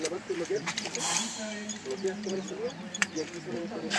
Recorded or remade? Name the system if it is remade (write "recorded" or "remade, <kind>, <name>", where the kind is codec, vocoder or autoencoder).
remade, vocoder, BigVGAN v2